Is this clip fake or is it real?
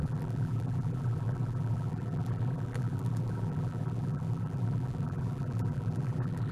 fake